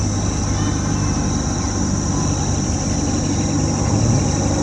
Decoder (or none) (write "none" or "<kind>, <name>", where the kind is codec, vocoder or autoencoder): none